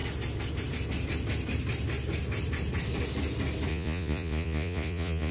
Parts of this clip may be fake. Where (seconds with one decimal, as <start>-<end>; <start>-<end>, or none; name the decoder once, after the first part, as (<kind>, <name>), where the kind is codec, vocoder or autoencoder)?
3.7-5.3 (vocoder, Vocos)